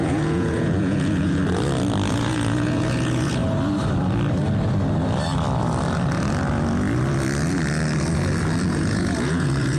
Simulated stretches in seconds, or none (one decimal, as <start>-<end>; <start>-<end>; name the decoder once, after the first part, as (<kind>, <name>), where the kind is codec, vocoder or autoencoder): 0.0-1.4 (vocoder, Vocos); 2.1-3.4; 8.7-9.8